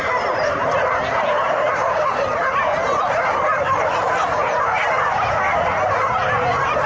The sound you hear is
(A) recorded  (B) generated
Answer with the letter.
A